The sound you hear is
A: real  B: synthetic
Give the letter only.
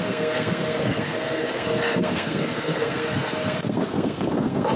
B